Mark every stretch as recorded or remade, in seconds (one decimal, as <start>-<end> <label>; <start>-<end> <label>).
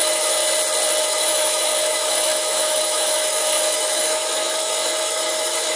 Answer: 0.0-0.4 remade; 0.4-1.0 recorded; 1.0-5.8 remade